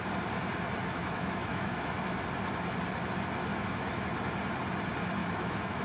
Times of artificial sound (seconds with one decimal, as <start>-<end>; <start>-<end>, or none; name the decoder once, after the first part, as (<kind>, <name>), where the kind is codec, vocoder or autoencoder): 0.8-2.2 (autoencoder, DAC-VAE); 3.5-4.0; 5.2-5.8

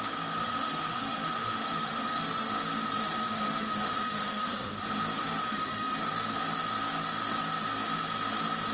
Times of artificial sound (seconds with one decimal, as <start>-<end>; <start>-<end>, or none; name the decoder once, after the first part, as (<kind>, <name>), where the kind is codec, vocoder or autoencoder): 0.4-2.5 (autoencoder, DAC-VAE); 3.0-4.7; 5.2-6.1

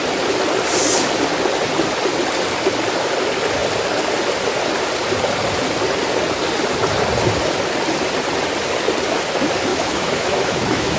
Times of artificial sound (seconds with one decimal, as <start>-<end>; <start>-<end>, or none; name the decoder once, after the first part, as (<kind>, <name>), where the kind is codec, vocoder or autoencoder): 9.7-11.0 (autoencoder, DAC-VAE)

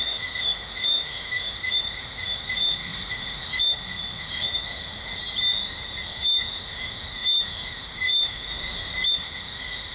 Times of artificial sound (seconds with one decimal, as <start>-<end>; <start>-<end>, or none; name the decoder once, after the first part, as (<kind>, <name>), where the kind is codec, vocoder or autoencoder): 0.0-5.1 (autoencoder, DAC-VAE); 6.1-8.5; 9.1-9.9

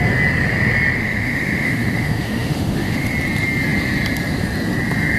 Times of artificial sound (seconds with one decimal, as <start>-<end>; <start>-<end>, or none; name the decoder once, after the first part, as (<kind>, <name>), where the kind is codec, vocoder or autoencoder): 1.0-3.1 (autoencoder, DAC-VAE)

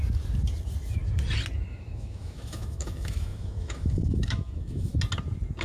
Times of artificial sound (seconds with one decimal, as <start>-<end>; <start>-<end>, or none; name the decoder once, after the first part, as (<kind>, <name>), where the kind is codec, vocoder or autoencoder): 1.7-4.9 (autoencoder, DAC-VAE)

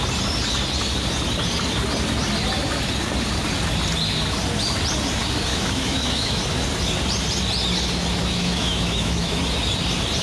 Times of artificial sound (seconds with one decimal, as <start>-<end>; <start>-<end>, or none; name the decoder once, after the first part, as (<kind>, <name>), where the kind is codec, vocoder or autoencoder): 5.5-6.4 (autoencoder, DAC-VAE); 8.2-9.4

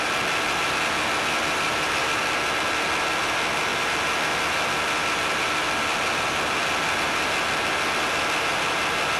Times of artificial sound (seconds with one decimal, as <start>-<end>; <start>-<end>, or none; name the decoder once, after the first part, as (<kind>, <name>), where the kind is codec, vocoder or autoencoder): none